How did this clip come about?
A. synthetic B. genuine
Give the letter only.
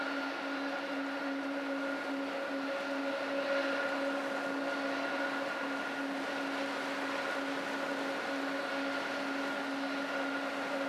B